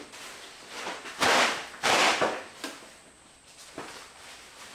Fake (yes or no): no